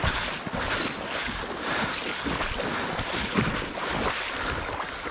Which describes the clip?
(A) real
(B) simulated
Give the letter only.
A